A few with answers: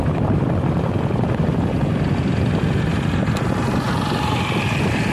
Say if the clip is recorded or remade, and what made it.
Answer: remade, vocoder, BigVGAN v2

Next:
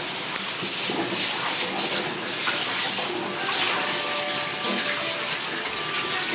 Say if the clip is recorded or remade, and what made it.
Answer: recorded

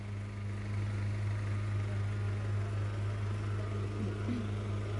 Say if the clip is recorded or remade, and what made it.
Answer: recorded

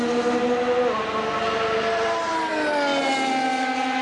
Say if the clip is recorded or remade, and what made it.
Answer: recorded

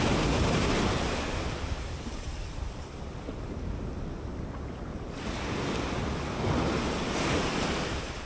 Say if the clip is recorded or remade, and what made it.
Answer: recorded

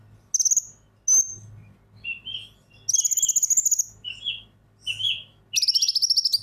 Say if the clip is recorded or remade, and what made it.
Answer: recorded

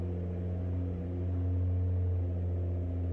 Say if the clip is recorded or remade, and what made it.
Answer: recorded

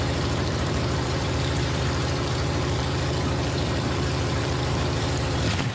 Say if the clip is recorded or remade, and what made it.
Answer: remade, vocoder, BigVGAN v2